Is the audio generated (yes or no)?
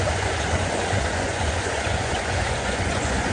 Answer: yes